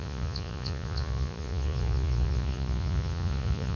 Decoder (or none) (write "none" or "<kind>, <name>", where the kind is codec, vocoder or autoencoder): vocoder, Vocos